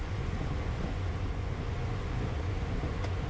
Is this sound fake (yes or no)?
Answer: yes